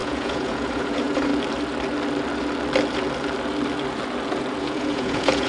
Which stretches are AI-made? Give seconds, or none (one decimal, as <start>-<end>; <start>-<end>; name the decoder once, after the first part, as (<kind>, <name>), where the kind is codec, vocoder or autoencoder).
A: 0.0-1.3 (vocoder, Vocos); 4.6-5.5